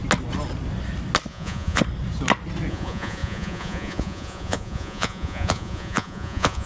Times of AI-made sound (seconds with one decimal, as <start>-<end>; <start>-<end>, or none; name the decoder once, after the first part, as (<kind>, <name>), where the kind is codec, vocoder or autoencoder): 1.3-1.8 (vocoder, Vocos); 2.7-6.7